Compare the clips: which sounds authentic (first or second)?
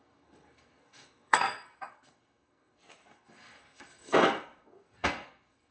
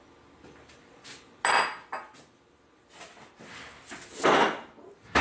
second